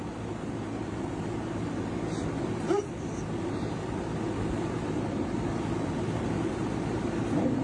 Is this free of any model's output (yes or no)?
yes